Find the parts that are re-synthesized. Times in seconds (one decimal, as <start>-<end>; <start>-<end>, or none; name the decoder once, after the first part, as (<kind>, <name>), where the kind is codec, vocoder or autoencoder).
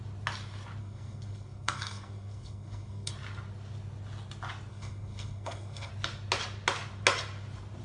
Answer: 0.8-3.1 (codec, SNAC); 4.7-5.9